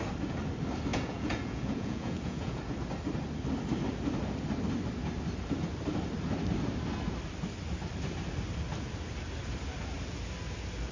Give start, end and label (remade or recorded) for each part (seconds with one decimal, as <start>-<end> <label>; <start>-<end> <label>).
0.0-0.9 recorded; 0.9-2.6 remade; 2.6-10.9 recorded